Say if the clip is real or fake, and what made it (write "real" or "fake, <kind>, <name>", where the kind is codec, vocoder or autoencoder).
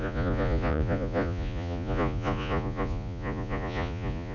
fake, vocoder, Vocos